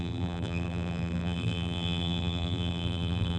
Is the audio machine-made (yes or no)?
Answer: yes